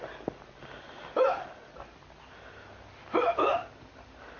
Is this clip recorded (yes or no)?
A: yes